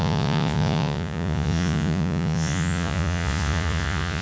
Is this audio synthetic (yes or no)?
yes